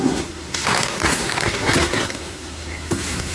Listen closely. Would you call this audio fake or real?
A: fake